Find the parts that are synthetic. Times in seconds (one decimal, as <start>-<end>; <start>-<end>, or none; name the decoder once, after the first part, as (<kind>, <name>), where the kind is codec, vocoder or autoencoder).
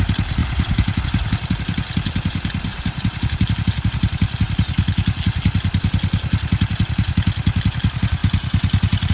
0.4-1.0 (vocoder, BigVGAN v2); 2.7-3.7